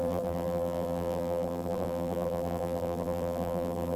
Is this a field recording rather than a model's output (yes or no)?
no